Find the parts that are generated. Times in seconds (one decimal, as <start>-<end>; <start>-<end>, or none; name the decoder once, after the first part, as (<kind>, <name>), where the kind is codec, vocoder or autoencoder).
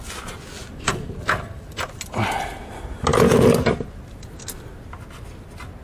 0.6-1.9 (vocoder, BigVGAN v2)